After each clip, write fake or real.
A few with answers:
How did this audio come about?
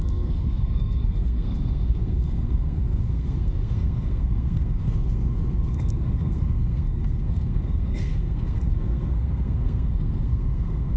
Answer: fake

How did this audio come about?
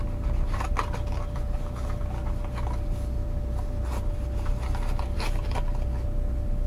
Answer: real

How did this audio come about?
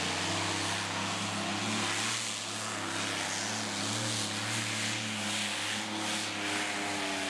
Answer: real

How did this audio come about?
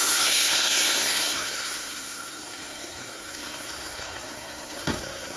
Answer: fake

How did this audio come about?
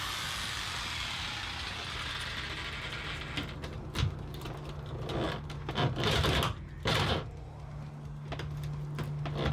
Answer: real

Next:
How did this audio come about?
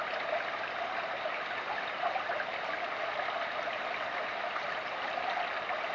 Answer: real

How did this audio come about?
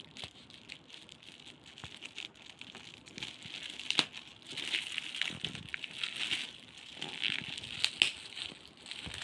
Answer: real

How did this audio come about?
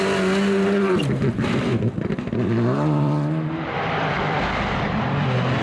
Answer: real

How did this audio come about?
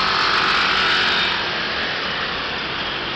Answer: real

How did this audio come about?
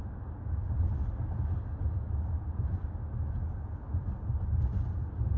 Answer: real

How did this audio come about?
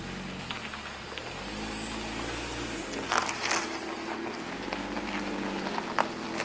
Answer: real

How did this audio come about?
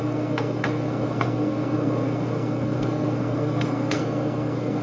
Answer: fake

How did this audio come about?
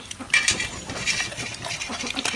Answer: real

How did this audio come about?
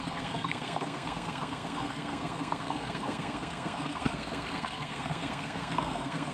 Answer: fake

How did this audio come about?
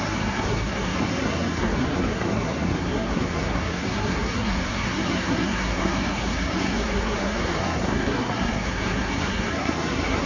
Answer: fake